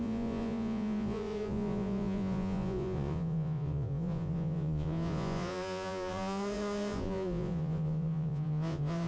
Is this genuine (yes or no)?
no